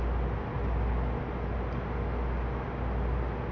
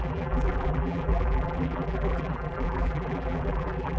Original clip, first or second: first